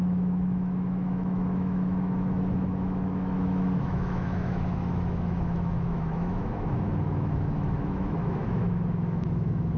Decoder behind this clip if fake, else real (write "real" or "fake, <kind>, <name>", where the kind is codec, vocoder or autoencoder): fake, autoencoder, DAC-VAE